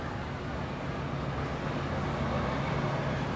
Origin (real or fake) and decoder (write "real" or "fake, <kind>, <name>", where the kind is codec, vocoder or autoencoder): real